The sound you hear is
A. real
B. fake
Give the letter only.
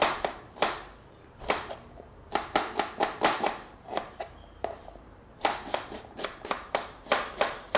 B